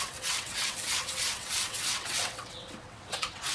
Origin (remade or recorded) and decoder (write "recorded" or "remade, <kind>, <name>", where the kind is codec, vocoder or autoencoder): remade, vocoder, WaveNeXt